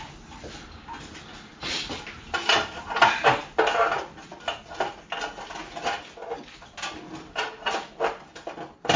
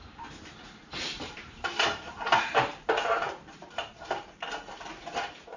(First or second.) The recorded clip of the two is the first